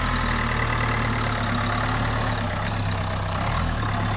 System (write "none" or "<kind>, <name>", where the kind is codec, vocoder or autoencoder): none